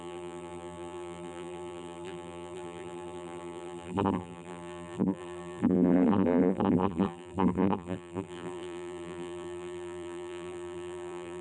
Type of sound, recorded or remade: remade